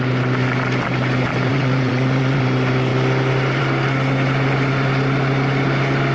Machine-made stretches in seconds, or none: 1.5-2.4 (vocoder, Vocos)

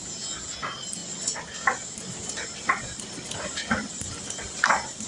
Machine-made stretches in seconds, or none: 0.0-0.6 (vocoder, Vocos)

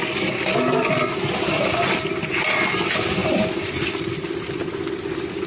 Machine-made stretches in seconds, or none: none